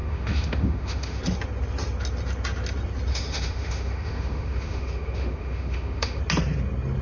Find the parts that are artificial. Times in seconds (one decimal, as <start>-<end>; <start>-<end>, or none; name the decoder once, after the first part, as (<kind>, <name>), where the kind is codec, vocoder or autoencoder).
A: 0.0-1.2 (autoencoder, DAC-VAE); 3.1-6.2